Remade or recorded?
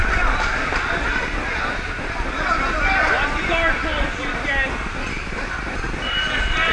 recorded